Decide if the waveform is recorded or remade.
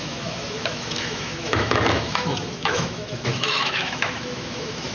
remade